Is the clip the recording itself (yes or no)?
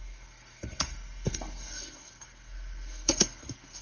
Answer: no